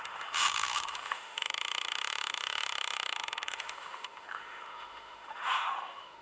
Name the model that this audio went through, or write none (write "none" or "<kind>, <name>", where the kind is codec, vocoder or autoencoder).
autoencoder, DAC-VAE